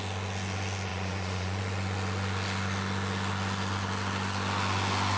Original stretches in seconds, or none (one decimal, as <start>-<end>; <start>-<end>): 0.0-0.9; 1.6-5.2